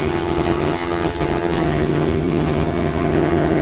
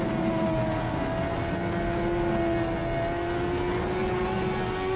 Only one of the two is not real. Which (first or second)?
first